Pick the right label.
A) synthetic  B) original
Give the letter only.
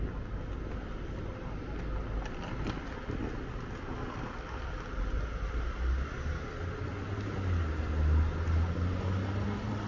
B